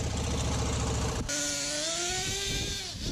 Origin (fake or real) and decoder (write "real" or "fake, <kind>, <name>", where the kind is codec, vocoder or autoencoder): real